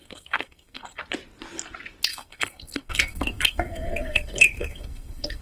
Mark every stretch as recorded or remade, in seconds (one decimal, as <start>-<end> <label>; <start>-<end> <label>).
0.0-1.0 remade; 1.0-2.1 recorded; 2.1-5.4 remade